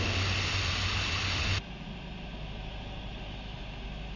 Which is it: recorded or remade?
recorded